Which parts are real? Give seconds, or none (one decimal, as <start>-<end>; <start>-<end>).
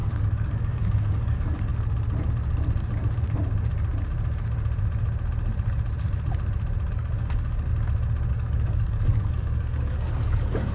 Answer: 1.7-6.9; 7.7-8.3